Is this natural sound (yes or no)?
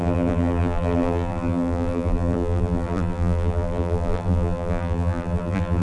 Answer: no